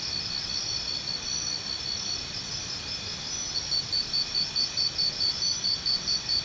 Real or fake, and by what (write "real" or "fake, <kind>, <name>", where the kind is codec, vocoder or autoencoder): real